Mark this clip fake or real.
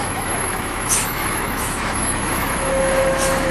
fake